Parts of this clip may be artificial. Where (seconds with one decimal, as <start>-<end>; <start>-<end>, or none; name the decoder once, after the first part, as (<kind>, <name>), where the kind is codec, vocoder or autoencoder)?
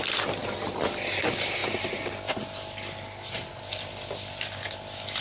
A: none